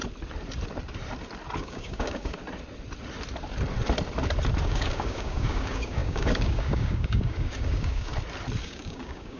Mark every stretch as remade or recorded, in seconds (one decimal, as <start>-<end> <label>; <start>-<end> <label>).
0.0-1.6 recorded; 1.6-2.4 remade; 2.4-4.6 recorded; 4.6-8.1 remade; 8.1-8.6 recorded; 8.6-9.4 remade